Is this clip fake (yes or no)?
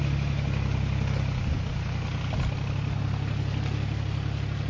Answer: no